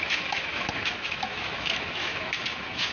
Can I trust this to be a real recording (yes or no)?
no